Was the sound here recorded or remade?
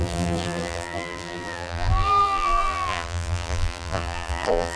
remade